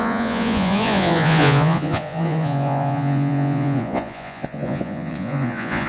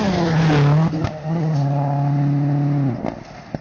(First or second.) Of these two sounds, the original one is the second